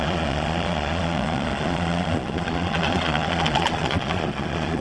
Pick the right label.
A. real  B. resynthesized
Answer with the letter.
B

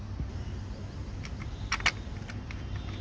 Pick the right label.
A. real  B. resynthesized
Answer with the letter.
A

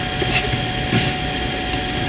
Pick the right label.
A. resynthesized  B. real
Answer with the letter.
B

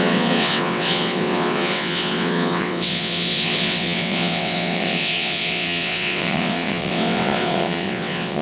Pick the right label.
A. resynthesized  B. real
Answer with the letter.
A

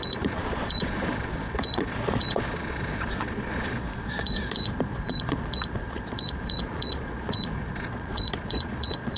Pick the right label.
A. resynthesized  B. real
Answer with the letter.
A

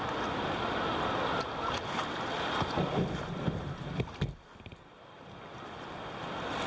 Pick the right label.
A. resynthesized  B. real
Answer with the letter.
B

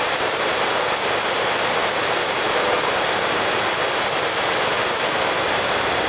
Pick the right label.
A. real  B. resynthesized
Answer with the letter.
A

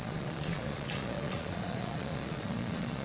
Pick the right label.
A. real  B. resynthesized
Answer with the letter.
B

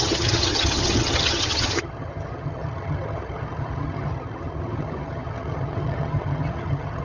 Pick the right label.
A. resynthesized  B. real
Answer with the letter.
A